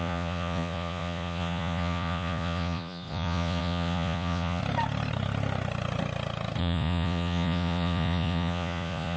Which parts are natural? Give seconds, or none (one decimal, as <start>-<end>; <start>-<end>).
4.6-6.6